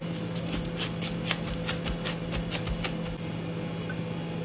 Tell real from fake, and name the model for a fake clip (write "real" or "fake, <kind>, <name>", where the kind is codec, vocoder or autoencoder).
real